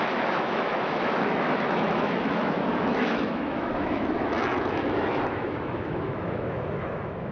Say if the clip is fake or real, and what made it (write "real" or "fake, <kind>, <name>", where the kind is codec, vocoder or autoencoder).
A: fake, autoencoder, DAC-VAE